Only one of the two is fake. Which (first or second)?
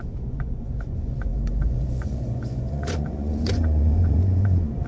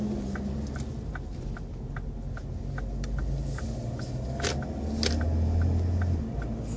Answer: first